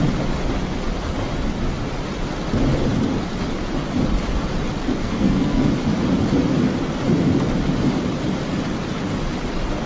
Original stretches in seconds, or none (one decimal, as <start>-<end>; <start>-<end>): 0.0-5.0; 5.7-9.9